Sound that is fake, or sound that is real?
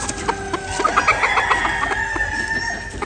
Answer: real